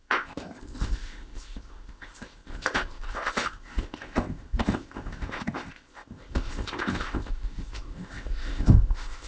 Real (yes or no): no